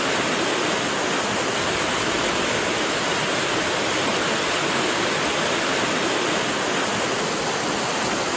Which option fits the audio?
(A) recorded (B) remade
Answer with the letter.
A